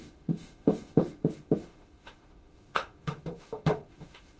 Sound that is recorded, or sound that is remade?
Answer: remade